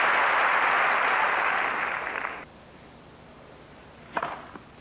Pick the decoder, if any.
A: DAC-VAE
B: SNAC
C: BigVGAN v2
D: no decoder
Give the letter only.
D